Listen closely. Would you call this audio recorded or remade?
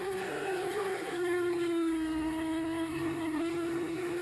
remade